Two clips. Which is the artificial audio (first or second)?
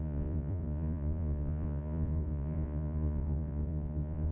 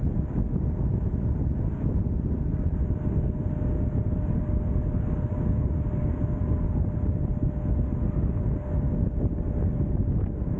first